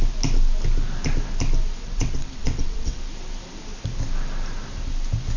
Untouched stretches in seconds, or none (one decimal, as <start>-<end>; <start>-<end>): 0.0-1.8; 3.0-5.4